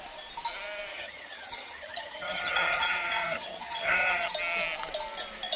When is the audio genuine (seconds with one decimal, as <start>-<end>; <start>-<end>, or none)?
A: 0.0-0.9; 4.3-5.6